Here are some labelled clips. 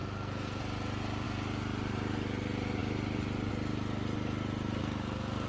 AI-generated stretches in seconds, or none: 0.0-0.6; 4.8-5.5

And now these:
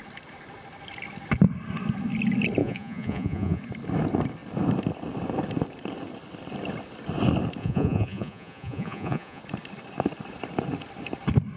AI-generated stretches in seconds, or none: 2.6-3.6; 7.6-9.4

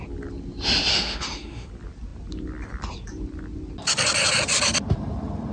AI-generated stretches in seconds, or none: 0.9-1.7

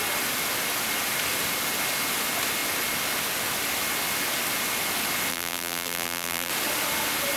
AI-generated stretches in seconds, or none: 5.3-6.5

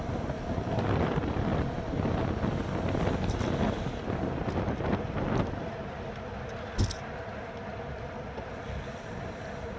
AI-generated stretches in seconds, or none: 0.0-1.5; 6.6-9.8

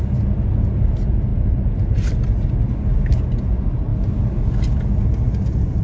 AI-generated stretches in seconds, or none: none